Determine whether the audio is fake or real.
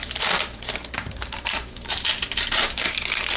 fake